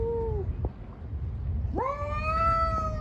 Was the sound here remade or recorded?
recorded